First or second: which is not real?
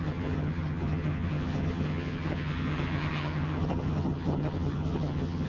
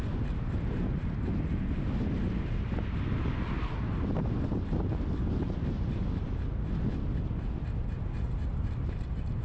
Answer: first